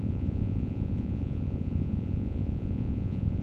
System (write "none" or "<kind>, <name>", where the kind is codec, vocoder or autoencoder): vocoder, Vocos